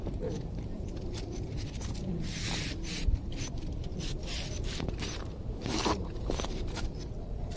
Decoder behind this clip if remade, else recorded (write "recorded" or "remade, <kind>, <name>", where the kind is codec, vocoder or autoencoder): remade, vocoder, BigVGAN v2